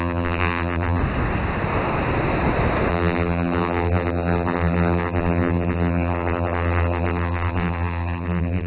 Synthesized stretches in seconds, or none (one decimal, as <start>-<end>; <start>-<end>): 0.0-1.0; 2.9-8.7